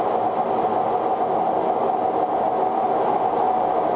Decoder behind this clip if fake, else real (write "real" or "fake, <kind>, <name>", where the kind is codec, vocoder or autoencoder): real